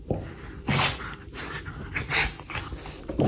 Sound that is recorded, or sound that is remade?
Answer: recorded